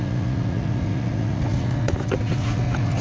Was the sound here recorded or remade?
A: remade